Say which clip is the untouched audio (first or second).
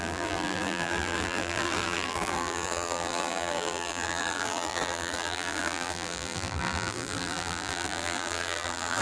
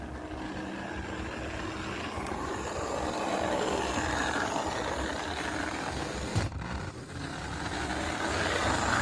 second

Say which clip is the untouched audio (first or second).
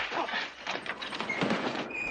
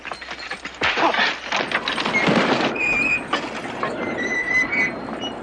second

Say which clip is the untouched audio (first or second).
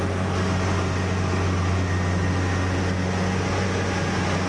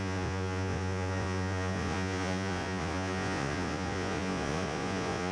first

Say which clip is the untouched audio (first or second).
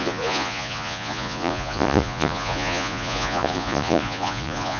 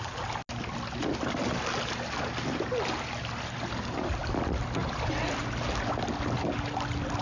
second